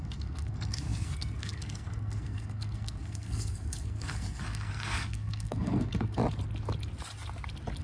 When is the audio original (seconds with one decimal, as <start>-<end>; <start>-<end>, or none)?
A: 6.2-7.8